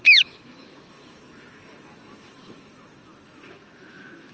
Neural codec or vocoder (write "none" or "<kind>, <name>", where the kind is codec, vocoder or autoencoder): autoencoder, DAC-VAE